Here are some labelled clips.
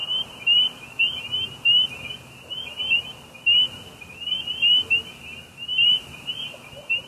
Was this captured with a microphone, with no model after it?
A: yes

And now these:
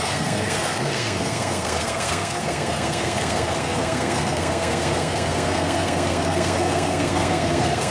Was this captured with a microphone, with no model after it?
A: no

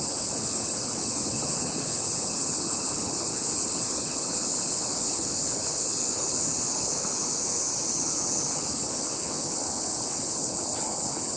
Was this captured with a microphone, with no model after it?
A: no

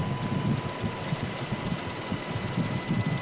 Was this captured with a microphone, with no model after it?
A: yes